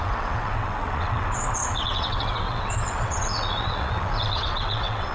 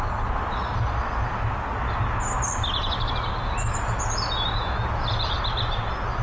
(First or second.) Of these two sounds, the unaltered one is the second